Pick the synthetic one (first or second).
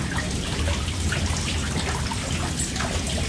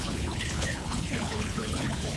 second